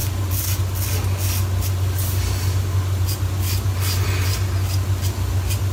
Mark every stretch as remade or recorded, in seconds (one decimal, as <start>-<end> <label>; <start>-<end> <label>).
0.0-5.7 recorded

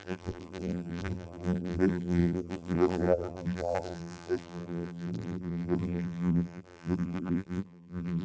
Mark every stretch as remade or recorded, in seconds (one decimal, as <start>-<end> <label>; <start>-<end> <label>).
0.0-8.2 remade

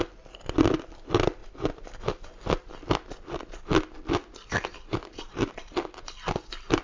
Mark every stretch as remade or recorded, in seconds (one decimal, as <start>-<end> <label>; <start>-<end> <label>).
0.0-6.8 recorded

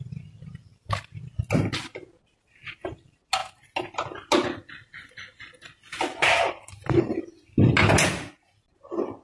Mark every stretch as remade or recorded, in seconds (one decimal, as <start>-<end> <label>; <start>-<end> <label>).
0.0-9.2 recorded

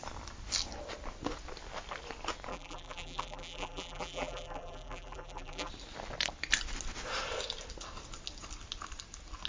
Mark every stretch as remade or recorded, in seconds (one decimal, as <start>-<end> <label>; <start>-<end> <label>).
0.0-2.5 recorded; 2.5-5.7 remade; 5.7-9.5 recorded